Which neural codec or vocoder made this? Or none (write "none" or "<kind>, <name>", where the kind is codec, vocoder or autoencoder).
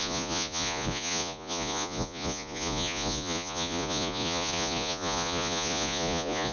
vocoder, Vocos